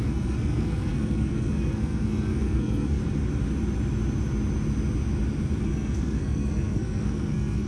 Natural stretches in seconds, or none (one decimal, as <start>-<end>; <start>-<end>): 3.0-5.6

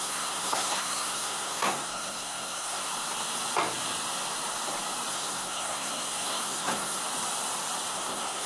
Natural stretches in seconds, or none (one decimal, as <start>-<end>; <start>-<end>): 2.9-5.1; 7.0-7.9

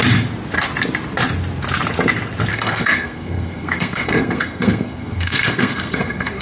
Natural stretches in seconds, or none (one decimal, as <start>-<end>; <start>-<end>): 0.0-2.5

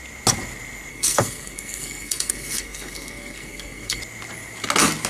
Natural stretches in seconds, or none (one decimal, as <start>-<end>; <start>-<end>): 0.0-0.9; 4.0-5.1

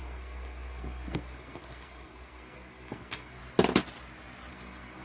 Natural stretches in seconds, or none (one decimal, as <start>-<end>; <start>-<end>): 3.4-4.5

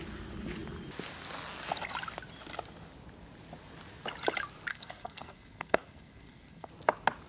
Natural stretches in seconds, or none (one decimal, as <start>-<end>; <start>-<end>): 0.0-4.7; 6.7-7.3